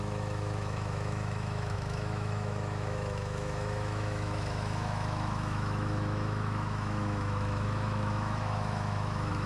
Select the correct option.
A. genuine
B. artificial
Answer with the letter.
B